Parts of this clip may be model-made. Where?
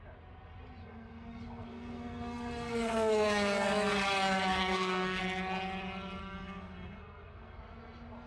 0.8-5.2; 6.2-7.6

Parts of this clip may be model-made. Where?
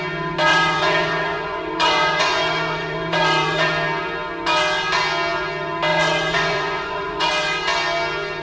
0.5-3.7; 5.9-7.3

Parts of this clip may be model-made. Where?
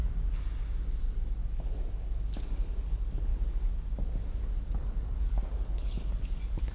1.0-3.3; 4.3-6.7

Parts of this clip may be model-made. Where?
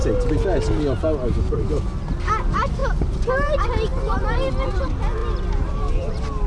none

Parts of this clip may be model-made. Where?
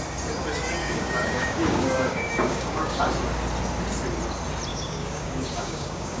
0.8-3.0; 4.7-6.2